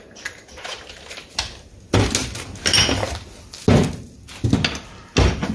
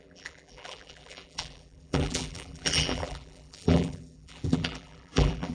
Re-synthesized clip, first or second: second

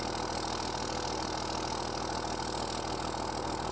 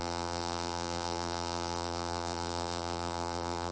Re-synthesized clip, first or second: second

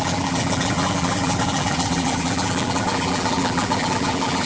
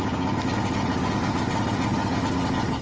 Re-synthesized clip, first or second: first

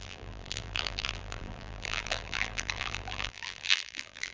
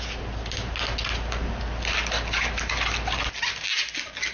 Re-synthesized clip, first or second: first